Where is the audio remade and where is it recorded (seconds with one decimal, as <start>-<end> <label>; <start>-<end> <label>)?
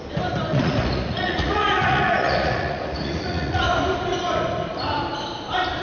0.0-0.5 recorded; 0.5-3.6 remade; 3.6-5.8 recorded